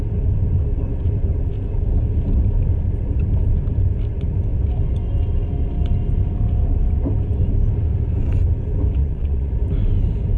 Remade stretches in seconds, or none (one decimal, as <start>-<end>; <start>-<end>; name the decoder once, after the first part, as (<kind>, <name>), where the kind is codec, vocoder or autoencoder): 9.0-9.5 (vocoder, Vocos)